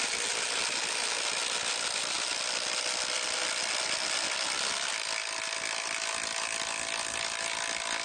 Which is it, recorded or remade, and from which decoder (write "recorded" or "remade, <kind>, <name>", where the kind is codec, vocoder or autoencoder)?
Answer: recorded